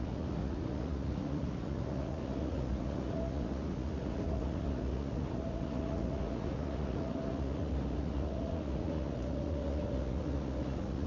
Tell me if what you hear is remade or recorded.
remade